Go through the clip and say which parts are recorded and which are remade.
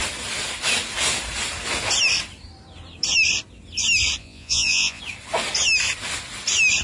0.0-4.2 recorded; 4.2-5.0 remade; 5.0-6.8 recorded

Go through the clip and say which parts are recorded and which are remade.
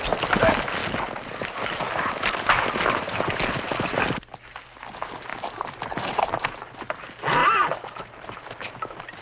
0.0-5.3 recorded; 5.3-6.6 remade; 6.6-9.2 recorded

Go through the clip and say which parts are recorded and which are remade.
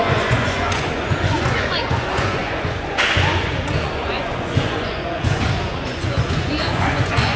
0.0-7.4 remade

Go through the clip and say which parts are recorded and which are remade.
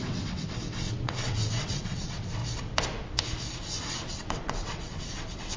0.0-2.4 remade; 2.4-3.8 recorded; 3.8-5.6 remade